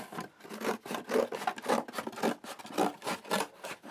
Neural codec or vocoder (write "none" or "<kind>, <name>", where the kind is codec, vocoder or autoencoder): none